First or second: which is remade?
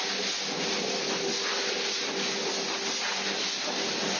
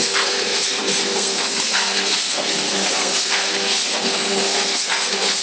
second